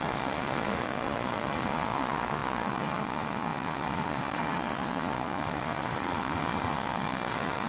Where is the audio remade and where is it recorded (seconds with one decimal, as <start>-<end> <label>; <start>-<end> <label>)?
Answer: 0.0-7.7 remade